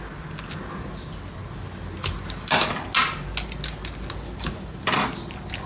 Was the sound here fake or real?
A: real